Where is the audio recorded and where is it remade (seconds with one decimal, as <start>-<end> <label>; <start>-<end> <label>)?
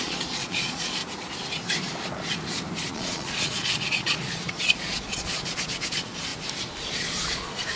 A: 0.0-1.0 remade; 1.0-2.9 recorded; 2.9-6.3 remade; 6.3-6.9 recorded; 6.9-7.8 remade